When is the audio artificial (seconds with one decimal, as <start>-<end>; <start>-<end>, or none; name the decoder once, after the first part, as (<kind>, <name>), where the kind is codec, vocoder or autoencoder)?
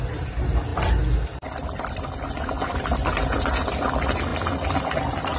none